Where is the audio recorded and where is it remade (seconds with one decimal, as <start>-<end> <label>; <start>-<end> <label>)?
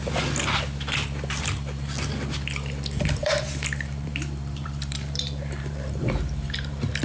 0.0-3.2 recorded; 3.2-7.0 remade